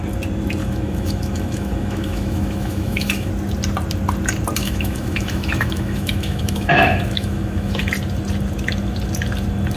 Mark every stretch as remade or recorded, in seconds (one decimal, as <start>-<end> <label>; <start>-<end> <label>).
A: 0.0-0.6 recorded; 0.6-3.3 remade; 3.3-4.6 recorded; 4.6-7.9 remade; 7.9-9.8 recorded